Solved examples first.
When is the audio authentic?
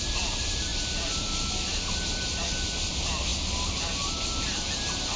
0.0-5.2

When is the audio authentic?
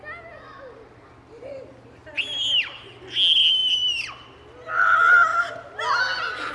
0.0-6.5